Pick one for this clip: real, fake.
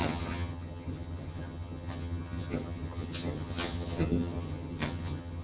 fake